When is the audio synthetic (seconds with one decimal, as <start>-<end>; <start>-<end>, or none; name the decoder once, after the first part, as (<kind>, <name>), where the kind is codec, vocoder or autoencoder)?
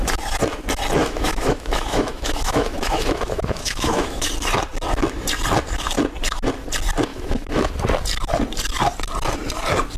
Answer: 1.0-4.3 (autoencoder, DAC-VAE); 7.1-7.7